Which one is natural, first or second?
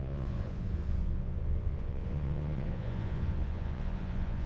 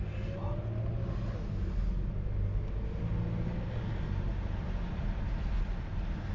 second